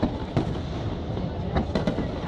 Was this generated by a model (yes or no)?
no